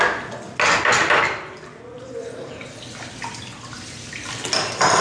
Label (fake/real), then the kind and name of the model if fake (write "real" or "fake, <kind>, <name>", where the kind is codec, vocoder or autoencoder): real